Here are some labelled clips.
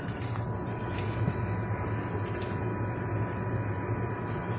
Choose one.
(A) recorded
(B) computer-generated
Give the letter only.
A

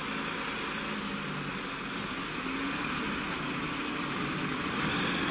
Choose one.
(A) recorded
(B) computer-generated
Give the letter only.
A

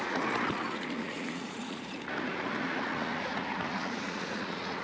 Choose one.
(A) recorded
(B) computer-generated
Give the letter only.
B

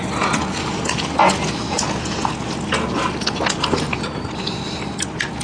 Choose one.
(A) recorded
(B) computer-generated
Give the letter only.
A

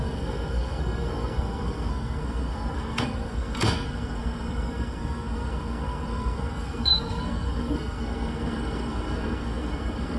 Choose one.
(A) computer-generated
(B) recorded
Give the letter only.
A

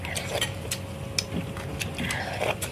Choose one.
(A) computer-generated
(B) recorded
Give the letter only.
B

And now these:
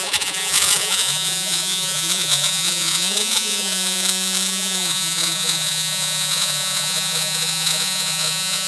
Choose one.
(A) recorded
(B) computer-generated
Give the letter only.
B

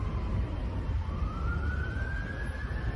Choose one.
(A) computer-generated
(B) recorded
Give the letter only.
B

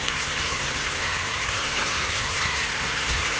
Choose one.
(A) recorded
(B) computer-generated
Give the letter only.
B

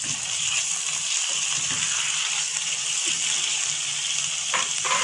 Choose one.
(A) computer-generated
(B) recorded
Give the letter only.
B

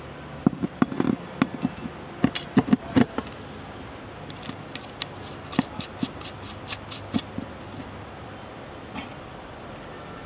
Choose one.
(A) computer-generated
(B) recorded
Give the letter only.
B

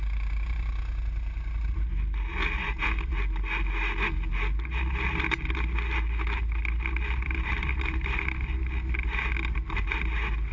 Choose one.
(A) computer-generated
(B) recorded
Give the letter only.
B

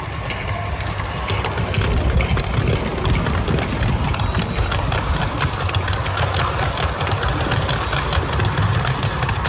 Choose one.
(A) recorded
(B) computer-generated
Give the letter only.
A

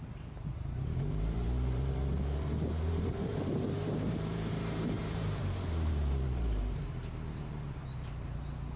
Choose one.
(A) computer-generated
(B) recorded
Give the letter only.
A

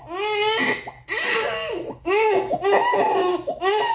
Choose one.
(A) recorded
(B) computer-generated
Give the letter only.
A